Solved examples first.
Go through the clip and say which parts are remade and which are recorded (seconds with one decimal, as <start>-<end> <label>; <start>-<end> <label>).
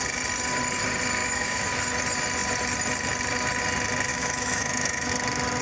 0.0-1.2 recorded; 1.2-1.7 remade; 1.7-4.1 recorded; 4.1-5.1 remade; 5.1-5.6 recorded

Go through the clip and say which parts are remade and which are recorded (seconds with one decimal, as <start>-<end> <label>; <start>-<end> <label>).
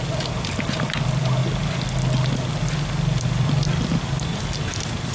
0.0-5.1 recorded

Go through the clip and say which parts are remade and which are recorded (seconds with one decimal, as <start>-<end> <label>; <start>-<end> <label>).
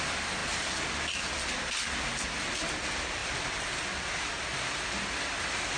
0.0-5.8 recorded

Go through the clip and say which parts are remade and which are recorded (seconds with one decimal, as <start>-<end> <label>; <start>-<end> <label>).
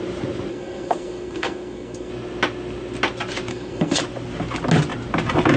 0.0-0.5 recorded; 0.5-2.1 remade; 2.1-3.5 recorded; 3.5-4.0 remade; 4.0-5.6 recorded